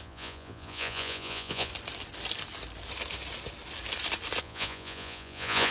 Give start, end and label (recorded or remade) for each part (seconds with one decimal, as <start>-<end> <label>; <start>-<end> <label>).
0.0-1.7 remade; 1.7-4.4 recorded; 4.4-5.7 remade